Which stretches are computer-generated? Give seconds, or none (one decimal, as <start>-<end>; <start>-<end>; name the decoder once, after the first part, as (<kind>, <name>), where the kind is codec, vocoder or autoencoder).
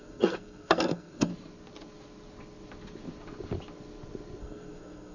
0.0-1.3 (codec, SNAC); 4.4-5.1